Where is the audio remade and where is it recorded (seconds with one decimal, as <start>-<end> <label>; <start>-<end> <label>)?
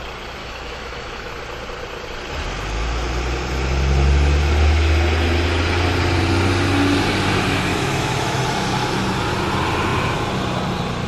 0.0-0.4 recorded; 0.4-1.3 remade; 1.3-7.7 recorded; 7.7-8.4 remade; 8.4-11.1 recorded